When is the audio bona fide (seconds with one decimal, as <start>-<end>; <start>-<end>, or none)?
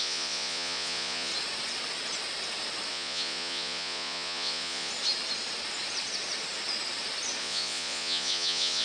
1.3-2.9; 4.9-7.4